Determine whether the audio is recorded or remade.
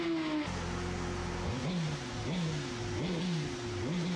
recorded